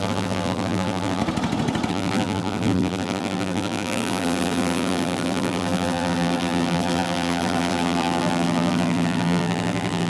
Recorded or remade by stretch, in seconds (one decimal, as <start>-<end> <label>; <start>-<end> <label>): 0.0-1.2 remade; 1.2-1.9 recorded; 1.9-10.1 remade